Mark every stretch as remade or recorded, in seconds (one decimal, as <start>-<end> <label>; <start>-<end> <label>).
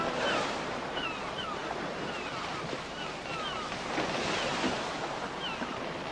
0.0-6.1 recorded